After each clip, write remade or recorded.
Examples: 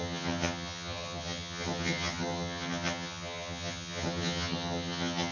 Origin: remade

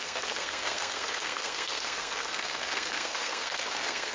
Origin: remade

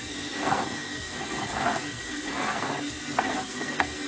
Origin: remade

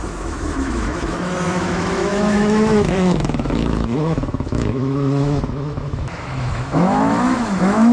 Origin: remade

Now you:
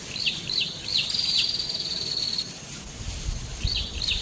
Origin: recorded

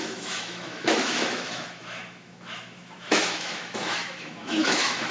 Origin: remade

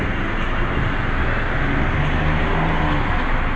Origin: recorded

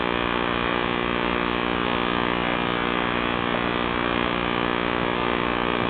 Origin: recorded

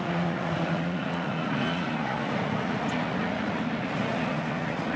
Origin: remade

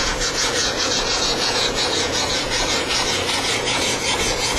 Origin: remade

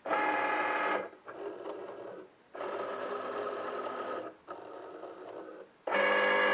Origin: recorded